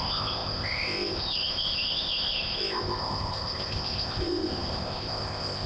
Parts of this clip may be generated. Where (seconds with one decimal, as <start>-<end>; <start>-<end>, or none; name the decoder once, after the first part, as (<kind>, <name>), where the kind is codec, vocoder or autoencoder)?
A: 0.0-5.7 (codec, ZipCodec)